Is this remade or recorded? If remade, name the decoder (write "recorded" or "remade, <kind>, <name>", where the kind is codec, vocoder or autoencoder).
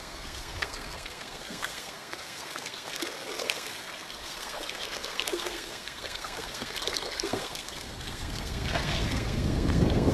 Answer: remade, codec, SNAC